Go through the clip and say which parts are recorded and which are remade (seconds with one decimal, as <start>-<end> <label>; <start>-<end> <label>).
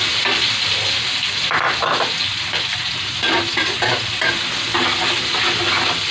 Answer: 0.0-2.7 recorded; 2.7-4.3 remade; 4.3-6.1 recorded